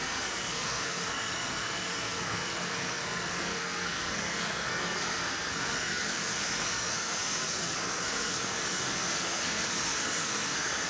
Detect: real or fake fake